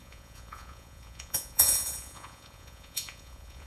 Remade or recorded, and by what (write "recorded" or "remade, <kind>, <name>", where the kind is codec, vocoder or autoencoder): remade, vocoder, Vocos